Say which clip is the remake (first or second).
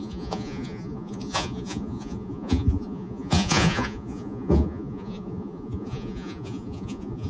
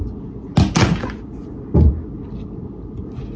first